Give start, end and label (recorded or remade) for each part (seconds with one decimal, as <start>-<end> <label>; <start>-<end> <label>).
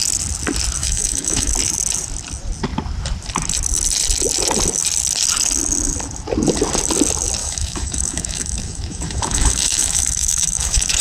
0.0-0.8 recorded; 0.8-1.5 remade; 1.5-7.4 recorded; 7.4-11.0 remade